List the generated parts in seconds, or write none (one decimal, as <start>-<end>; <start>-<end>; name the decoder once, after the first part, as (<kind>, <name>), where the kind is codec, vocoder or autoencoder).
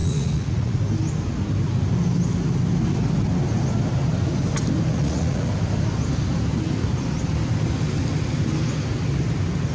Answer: 0.0-0.8 (vocoder, Vocos); 4.9-5.5